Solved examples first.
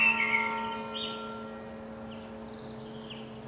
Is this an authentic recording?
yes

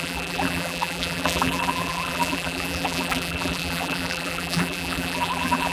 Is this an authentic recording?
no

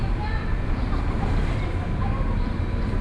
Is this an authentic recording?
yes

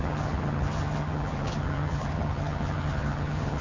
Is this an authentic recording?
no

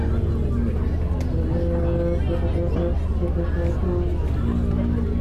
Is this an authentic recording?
yes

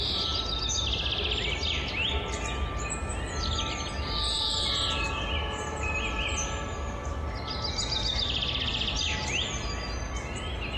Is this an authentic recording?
yes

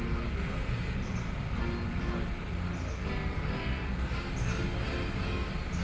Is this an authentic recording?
yes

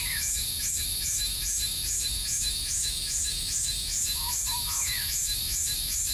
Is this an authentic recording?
no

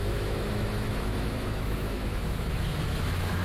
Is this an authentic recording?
no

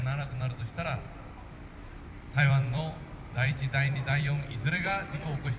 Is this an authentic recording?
no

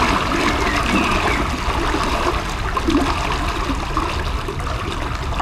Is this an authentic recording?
yes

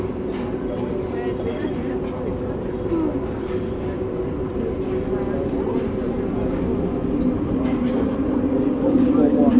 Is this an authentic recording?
yes